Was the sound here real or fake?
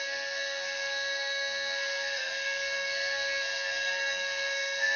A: fake